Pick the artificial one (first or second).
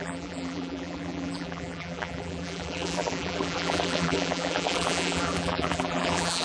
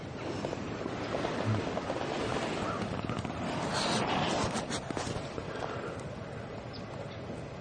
first